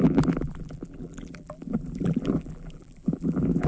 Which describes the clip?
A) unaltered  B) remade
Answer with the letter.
B